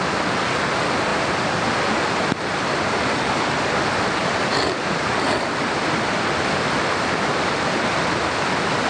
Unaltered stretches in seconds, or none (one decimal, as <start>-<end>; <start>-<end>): 0.0-8.9